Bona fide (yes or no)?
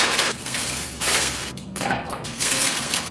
no